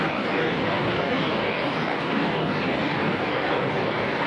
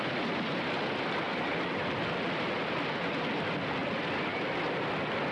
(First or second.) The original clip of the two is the second